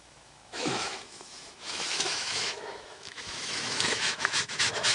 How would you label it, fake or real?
fake